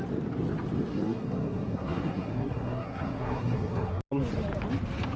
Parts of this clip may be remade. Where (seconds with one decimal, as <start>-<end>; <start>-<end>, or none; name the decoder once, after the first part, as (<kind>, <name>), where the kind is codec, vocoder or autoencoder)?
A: 0.9-4.0 (codec, SNAC)